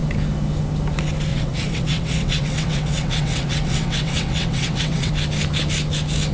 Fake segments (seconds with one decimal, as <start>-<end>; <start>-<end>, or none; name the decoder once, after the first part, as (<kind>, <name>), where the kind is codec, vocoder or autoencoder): 1.3-5.1 (vocoder, WaveNeXt)